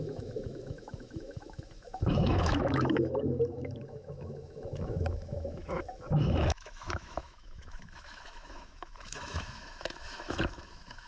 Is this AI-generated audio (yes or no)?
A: yes